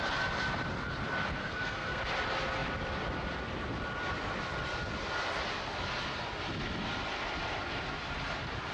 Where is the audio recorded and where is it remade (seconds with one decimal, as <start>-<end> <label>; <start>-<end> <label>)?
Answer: 0.0-1.4 recorded; 1.4-2.0 remade; 2.0-8.7 recorded